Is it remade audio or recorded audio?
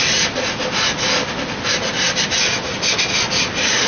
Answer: recorded